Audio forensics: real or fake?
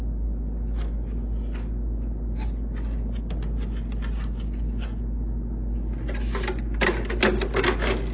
real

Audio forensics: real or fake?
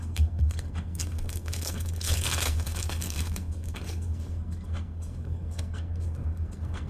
fake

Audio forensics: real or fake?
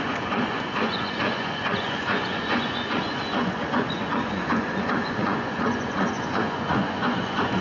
fake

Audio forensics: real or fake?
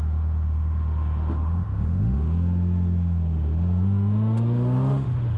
fake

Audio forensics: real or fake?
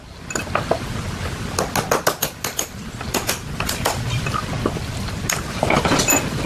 real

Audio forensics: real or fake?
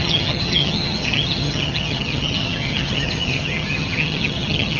fake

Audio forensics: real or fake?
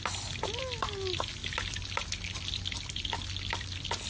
real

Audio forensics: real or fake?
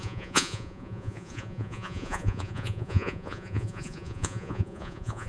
fake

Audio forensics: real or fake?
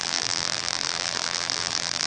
fake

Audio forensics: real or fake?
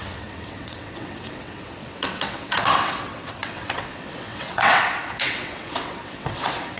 fake